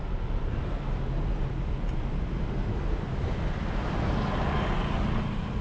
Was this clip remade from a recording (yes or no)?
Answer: no